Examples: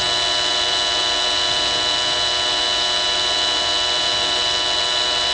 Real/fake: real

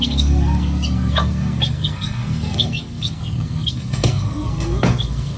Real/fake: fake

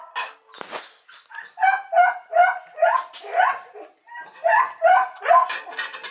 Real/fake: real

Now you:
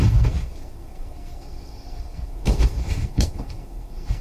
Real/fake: fake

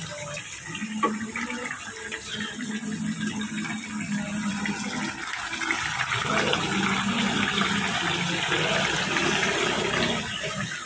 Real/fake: real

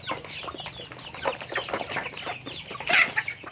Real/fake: real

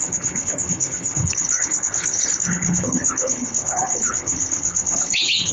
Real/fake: fake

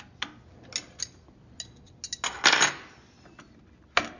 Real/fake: real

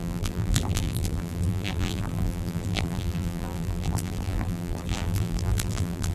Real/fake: fake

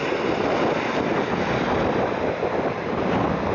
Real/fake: real